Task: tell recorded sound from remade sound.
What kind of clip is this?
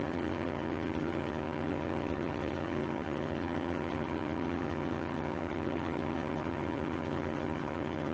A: remade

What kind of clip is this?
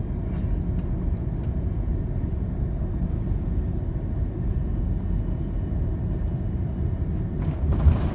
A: recorded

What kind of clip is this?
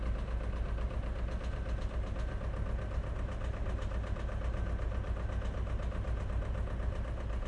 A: recorded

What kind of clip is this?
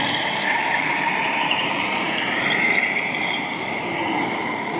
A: remade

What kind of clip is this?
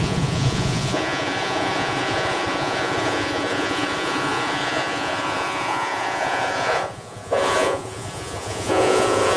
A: remade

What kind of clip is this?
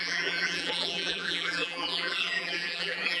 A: remade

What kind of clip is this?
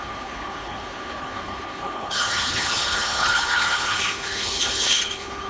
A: remade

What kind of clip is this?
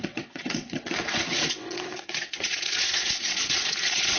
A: remade